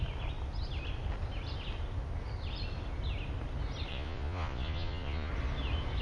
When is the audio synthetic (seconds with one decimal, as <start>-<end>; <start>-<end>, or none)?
3.9-5.3